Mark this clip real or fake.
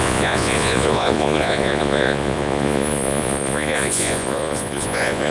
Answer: fake